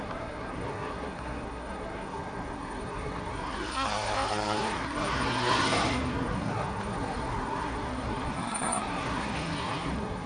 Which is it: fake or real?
fake